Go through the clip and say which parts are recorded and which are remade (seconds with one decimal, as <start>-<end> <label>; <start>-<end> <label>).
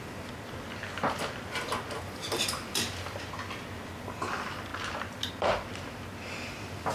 0.0-6.9 recorded